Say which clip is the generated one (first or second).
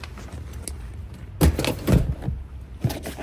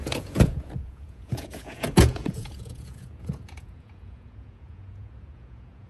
second